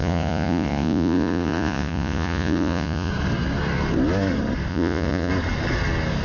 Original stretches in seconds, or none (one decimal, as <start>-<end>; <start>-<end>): 3.1-4.7; 5.3-6.2